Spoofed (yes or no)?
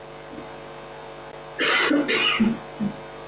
no